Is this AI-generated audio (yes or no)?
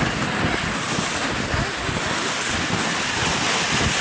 no